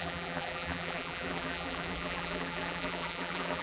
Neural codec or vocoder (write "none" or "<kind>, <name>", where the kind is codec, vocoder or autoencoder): vocoder, BigVGAN v2